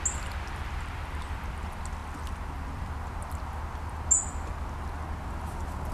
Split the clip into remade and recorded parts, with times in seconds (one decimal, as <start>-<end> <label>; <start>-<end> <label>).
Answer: 0.0-5.9 recorded